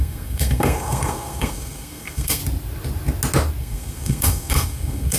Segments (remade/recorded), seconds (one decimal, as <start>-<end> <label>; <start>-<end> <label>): 0.0-2.4 remade; 2.4-3.6 recorded; 3.6-5.2 remade